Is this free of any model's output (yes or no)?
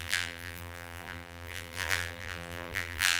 no